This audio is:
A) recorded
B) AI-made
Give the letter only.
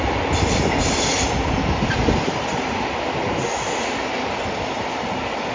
A